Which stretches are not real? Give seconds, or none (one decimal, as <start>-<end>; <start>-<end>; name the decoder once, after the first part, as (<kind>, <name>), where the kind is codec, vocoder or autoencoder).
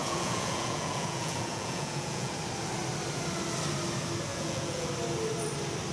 0.0-2.3 (vocoder, Vocos); 4.3-4.9